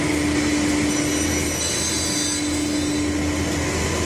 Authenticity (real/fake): real